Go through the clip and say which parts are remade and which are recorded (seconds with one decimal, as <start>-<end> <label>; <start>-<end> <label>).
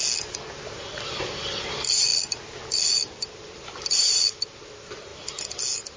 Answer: 0.0-6.0 recorded